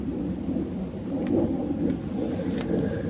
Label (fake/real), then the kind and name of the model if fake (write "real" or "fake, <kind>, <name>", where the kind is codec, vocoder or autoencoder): real